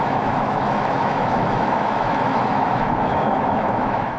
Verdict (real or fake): fake